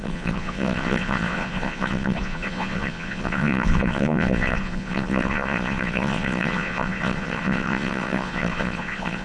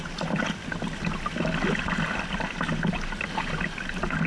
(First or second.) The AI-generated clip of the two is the first